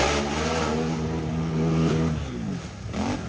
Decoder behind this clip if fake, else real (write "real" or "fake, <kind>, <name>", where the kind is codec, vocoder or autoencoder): real